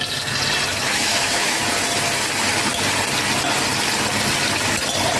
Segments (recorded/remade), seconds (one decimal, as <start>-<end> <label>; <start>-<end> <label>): 0.0-0.7 recorded; 0.7-1.6 remade; 1.6-5.2 recorded